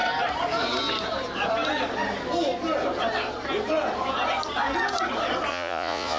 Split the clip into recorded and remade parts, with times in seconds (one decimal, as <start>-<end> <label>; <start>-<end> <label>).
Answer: 0.0-5.5 recorded; 5.5-6.2 remade